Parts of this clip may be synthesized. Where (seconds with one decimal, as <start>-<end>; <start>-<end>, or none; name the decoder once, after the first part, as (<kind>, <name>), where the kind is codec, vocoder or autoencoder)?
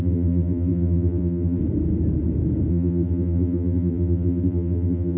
0.0-1.6 (vocoder, BigVGAN v2); 2.7-5.2